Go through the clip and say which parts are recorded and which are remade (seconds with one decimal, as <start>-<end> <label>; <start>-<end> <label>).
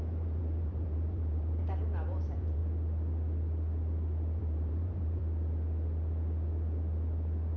0.0-2.6 remade; 2.6-4.4 recorded; 4.4-5.2 remade; 5.2-7.6 recorded